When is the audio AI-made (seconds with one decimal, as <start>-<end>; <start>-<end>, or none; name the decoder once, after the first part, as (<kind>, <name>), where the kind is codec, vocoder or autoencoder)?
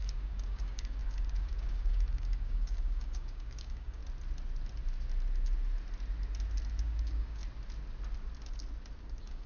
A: 0.0-4.0 (codec, DAC); 6.8-7.4; 9.0-9.5